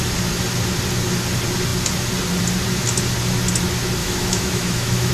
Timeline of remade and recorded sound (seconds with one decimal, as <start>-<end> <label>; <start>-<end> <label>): 0.0-4.0 recorded; 4.0-5.1 remade